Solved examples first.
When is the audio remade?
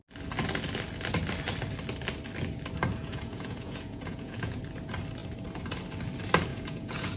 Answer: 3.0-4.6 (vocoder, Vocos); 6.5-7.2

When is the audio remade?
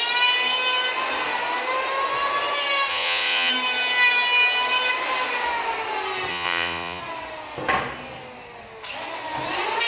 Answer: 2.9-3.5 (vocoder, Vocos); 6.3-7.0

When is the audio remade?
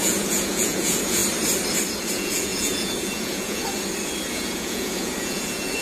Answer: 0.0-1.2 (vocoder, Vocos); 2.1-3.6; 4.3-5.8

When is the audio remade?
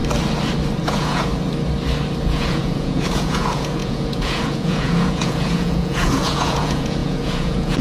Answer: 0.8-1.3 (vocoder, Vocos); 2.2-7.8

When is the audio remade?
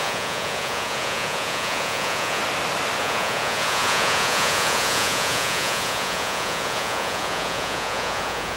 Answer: 0.0-2.4 (vocoder, Vocos); 3.0-8.6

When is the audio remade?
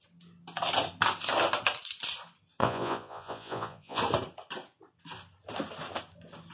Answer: 2.6-4.0 (vocoder, Vocos)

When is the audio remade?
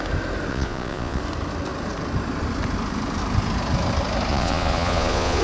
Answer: 0.5-1.2 (vocoder, Vocos); 4.3-5.4